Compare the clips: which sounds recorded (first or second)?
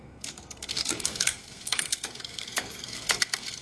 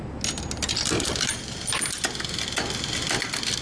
second